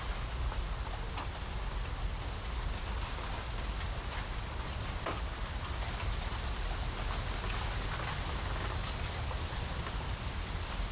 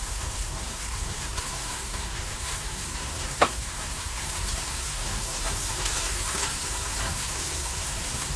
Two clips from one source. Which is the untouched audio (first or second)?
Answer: first